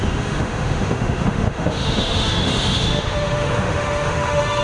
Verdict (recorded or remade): remade